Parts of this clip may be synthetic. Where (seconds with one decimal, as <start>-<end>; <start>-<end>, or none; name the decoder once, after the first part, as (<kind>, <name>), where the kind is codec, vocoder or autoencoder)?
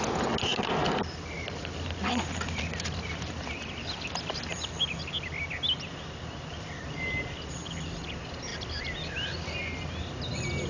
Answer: none